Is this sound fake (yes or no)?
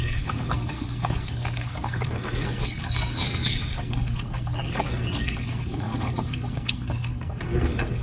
yes